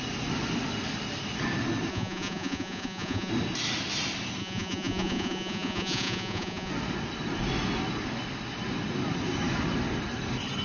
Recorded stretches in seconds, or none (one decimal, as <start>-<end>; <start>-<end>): 0.0-1.9; 3.3-4.4; 6.7-10.6